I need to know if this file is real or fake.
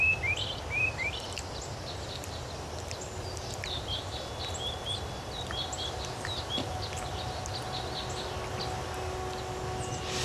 real